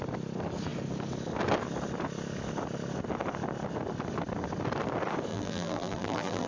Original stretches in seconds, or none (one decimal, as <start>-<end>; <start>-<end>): 0.0-5.3